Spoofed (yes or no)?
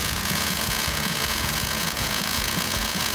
yes